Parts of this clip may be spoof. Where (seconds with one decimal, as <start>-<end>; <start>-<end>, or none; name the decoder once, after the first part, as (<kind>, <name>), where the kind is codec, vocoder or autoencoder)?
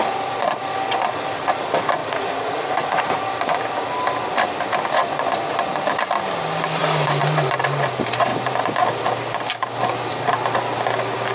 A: 2.0-3.2 (vocoder, Vocos)